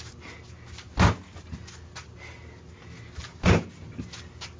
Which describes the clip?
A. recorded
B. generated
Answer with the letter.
A